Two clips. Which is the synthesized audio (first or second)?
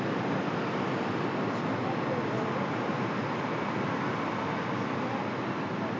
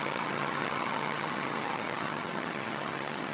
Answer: second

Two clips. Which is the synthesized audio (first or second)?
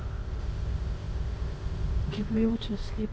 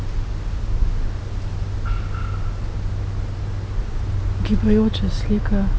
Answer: first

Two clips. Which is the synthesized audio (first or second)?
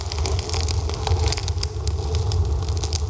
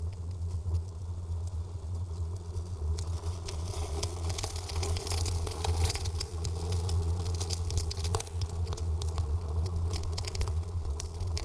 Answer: second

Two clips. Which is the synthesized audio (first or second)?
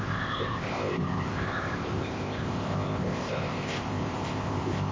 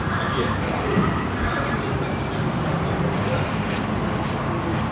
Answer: first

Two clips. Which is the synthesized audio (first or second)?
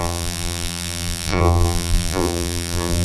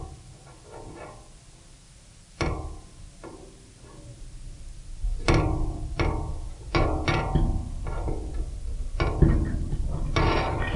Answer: first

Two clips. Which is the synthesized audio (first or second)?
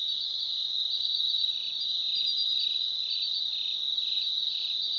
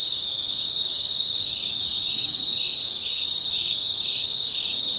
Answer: second